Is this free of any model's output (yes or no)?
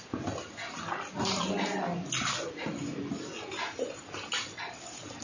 yes